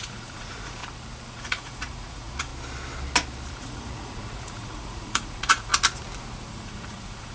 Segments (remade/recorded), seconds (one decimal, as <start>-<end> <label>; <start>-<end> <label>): 0.0-0.8 remade; 0.8-1.3 recorded; 1.3-2.5 remade; 2.5-3.5 recorded; 3.5-5.7 remade; 5.7-6.5 recorded; 6.5-7.3 remade